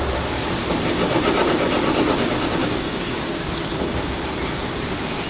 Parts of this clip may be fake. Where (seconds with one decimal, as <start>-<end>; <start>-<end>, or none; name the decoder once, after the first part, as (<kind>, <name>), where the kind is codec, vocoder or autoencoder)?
2.6-3.5 (codec, DAC)